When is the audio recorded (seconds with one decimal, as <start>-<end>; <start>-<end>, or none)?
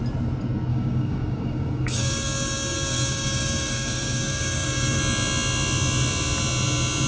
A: 0.0-0.7; 5.0-7.1